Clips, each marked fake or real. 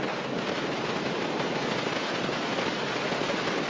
real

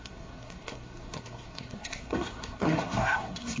fake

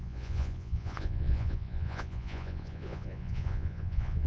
fake